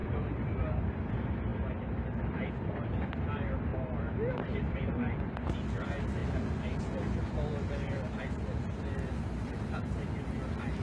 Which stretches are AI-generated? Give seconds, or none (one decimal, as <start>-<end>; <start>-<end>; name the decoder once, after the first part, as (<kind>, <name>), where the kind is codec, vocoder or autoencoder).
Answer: 0.0-1.5 (vocoder, BigVGAN v2); 2.2-3.7; 4.3-6.2; 6.8-10.8